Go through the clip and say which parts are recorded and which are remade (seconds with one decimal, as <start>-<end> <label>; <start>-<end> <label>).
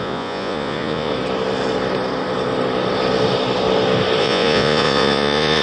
0.0-1.1 remade; 1.1-4.2 recorded; 4.2-5.6 remade